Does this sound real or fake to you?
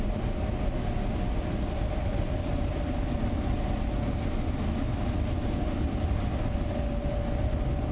real